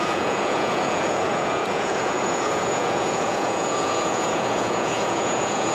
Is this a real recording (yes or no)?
no